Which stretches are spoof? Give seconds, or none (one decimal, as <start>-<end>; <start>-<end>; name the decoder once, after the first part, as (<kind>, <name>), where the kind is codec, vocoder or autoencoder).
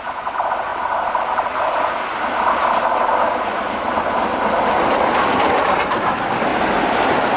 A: none